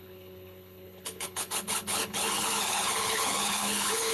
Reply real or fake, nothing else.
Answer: fake